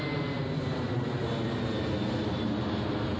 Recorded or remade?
recorded